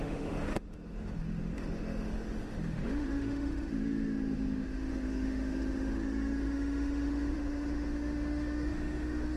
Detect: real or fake fake